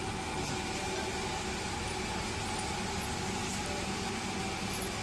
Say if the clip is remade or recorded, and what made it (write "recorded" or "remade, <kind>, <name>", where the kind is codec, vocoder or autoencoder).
recorded